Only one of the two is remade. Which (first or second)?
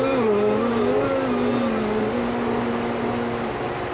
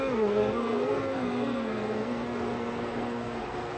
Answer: second